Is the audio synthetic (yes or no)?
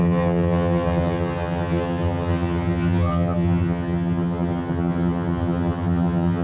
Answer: yes